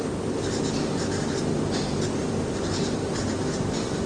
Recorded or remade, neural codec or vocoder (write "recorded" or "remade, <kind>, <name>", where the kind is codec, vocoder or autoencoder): recorded